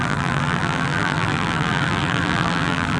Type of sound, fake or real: fake